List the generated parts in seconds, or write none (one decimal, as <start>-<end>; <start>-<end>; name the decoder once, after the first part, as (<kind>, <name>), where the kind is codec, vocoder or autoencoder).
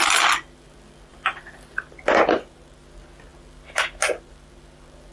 none